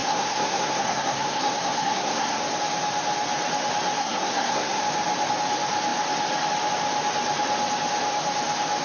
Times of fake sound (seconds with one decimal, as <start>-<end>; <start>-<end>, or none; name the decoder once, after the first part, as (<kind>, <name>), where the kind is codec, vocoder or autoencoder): 0.0-2.4 (codec, SNAC); 4.0-4.8